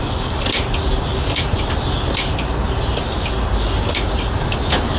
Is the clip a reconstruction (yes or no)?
no